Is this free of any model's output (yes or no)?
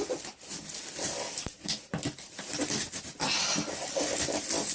yes